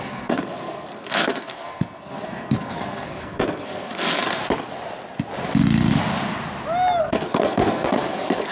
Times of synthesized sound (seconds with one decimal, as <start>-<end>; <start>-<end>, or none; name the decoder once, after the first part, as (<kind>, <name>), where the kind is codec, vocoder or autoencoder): 0.0-4.4 (codec, SNAC); 7.0-8.5